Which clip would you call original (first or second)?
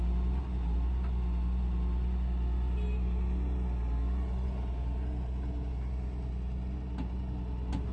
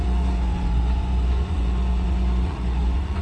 first